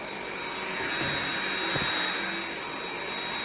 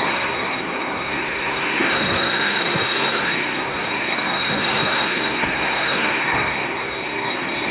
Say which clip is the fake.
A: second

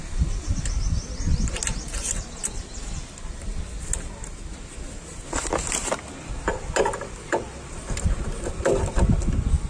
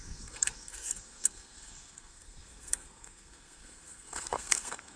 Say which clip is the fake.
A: second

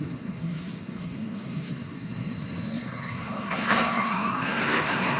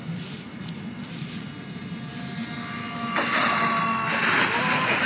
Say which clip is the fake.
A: first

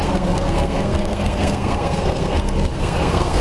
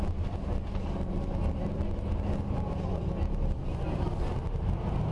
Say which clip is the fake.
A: first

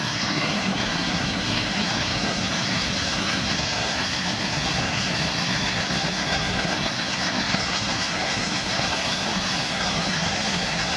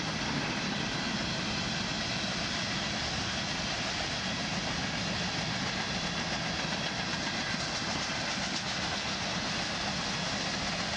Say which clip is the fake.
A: first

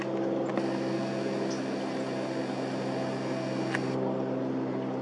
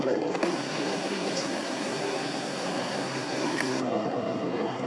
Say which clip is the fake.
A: second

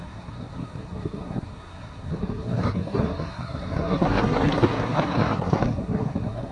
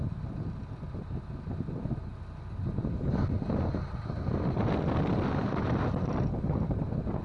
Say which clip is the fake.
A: first